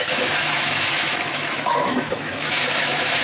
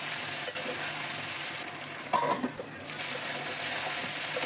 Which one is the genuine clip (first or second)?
second